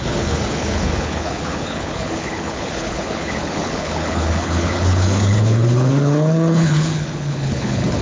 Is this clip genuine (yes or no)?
no